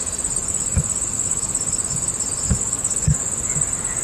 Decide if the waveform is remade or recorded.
remade